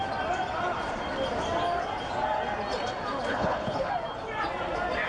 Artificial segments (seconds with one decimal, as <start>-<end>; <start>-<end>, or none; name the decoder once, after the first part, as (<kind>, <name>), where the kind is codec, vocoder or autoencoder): 3.3-3.9 (codec, HILCodec)